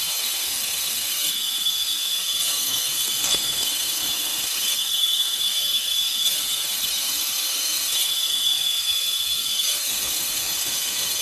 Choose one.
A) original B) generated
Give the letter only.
B